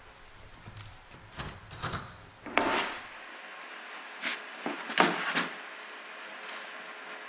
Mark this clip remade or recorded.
recorded